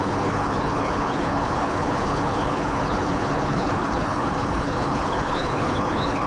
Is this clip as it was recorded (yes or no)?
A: no